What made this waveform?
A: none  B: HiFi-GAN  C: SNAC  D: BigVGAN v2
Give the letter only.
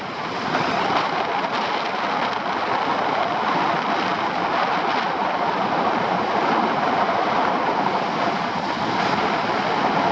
A